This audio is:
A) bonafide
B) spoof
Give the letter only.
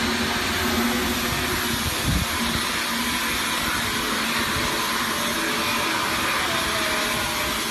A